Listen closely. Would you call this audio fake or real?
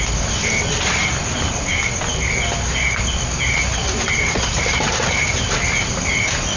real